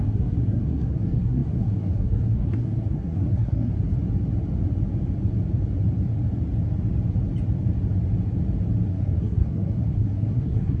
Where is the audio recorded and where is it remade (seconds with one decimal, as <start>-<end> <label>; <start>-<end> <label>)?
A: 0.0-3.7 remade; 3.7-8.9 recorded; 8.9-10.8 remade